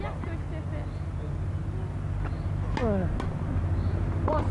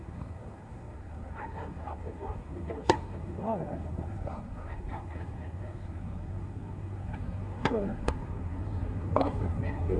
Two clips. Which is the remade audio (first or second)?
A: second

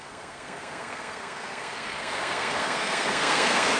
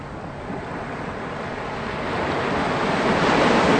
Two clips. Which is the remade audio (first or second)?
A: first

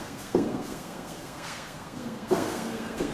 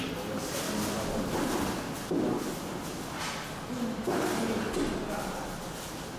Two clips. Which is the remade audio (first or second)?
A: first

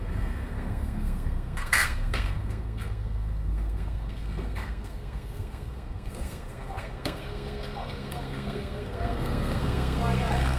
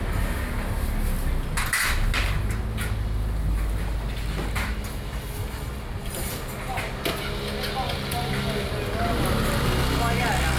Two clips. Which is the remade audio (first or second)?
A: first